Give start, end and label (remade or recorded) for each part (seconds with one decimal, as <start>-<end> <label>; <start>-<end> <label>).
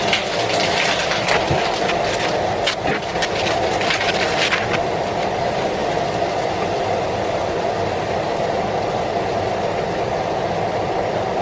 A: 0.0-11.4 recorded